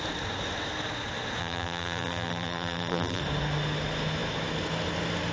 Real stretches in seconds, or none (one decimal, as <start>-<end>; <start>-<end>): 0.0-1.4; 3.2-5.3